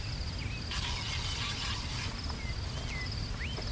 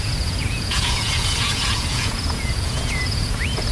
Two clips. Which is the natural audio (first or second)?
first